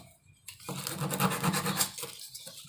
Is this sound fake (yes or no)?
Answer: no